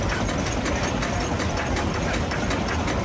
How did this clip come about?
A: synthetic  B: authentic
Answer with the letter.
A